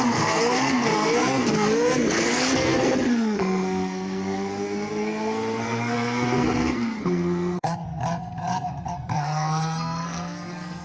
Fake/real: fake